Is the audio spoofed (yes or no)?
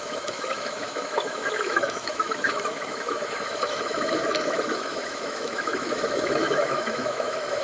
yes